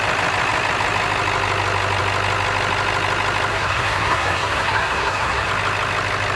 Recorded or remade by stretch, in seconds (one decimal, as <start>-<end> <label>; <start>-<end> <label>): 0.0-3.5 recorded; 3.5-5.5 remade; 5.5-6.4 recorded